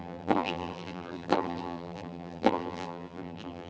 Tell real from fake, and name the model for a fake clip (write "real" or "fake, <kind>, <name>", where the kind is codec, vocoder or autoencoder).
fake, vocoder, BigVGAN v2